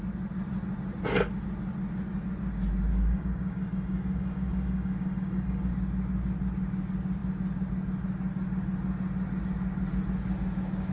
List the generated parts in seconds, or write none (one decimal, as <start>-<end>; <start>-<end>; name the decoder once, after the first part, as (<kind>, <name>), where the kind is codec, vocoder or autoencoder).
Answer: 2.9-5.7 (codec, DAC)